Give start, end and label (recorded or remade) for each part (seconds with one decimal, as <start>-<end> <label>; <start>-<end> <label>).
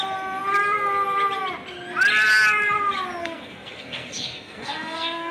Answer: 0.0-3.2 recorded; 3.2-5.3 remade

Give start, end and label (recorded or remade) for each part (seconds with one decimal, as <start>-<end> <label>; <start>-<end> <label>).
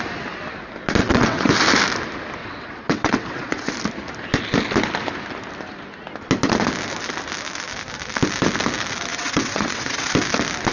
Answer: 0.0-1.0 recorded; 1.0-1.5 remade; 1.5-2.4 recorded; 2.4-3.7 remade; 3.7-9.1 recorded; 9.1-10.1 remade; 10.1-10.7 recorded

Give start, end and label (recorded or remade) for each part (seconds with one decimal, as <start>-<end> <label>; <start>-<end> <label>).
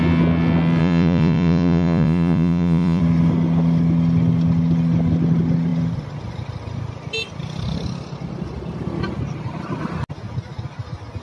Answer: 0.0-0.8 recorded; 0.8-3.0 remade; 3.0-11.2 recorded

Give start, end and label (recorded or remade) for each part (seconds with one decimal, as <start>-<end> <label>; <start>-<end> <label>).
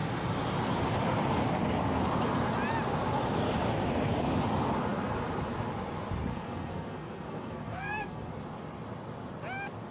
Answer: 0.0-6.3 recorded; 6.3-8.3 remade; 8.3-9.9 recorded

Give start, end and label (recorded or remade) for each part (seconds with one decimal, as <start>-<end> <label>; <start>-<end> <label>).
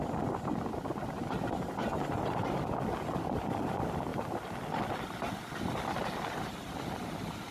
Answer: 0.0-1.8 recorded; 1.8-2.6 remade; 2.6-7.5 recorded